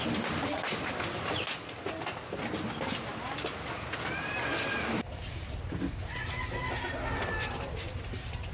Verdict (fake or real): real